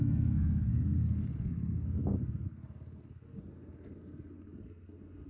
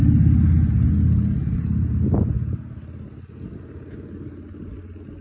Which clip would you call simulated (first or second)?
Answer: first